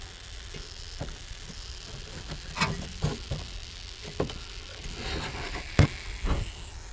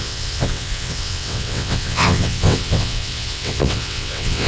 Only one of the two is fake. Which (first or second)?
second